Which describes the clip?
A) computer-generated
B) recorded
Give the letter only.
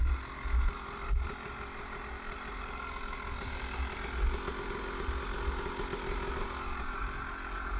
B